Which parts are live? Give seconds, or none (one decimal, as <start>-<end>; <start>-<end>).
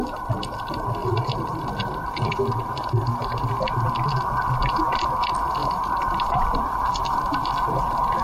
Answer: 0.0-1.0; 3.5-5.6; 7.5-8.2